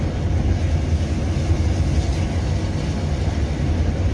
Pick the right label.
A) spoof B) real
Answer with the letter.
B